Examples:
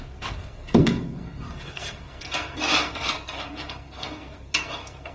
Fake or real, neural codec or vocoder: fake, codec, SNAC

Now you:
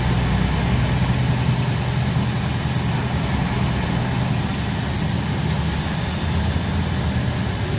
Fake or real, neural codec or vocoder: real